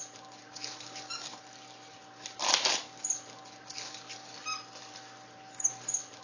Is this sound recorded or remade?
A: recorded